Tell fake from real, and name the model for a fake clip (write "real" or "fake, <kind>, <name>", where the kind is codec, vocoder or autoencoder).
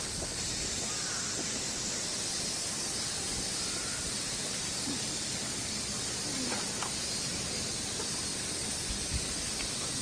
real